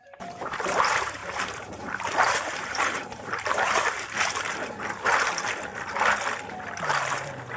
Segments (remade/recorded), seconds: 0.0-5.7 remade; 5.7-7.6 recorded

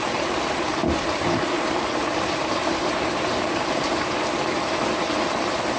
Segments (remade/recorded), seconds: 0.0-0.8 recorded; 0.8-4.0 remade; 4.0-5.8 recorded

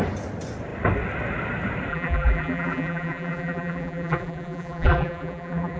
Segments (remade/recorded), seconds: 0.0-1.9 recorded; 1.9-5.8 remade

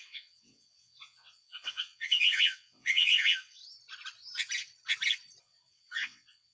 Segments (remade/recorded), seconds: 0.0-3.6 remade; 3.6-5.4 recorded; 5.4-6.5 remade

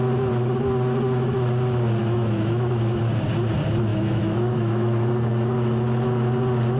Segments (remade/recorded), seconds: 0.0-2.0 recorded; 2.0-3.0 remade; 3.0-3.9 recorded; 3.9-5.1 remade; 5.1-6.8 recorded

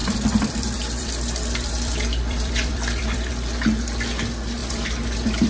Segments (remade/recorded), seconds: 0.0-3.3 remade; 3.3-4.6 recorded; 4.6-5.5 remade

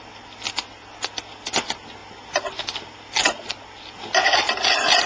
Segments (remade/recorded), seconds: 0.0-5.1 recorded